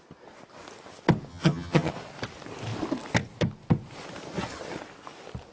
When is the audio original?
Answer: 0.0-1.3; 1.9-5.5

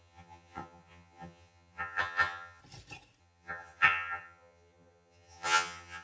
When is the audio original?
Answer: 2.6-3.2

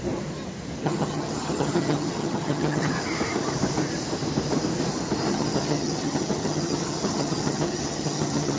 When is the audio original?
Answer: 0.0-0.8; 2.9-5.3